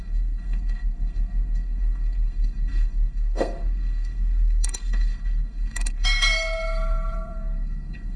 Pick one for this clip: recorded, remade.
remade